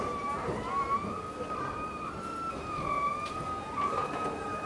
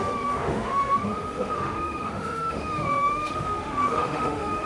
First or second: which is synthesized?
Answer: second